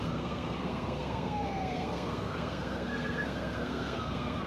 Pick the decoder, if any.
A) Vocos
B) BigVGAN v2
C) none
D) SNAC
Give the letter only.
D